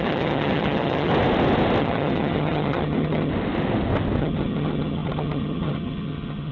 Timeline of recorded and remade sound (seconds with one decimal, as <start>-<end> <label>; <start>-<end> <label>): 0.0-1.1 remade; 1.1-1.8 recorded; 1.8-3.3 remade; 3.3-4.2 recorded; 4.2-6.5 remade